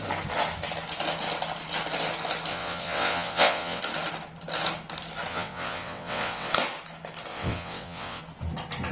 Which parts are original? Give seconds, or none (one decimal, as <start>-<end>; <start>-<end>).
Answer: 0.0-2.5; 3.8-5.3; 6.5-7.3; 8.2-8.9